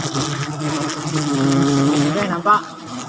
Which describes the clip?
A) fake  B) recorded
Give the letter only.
B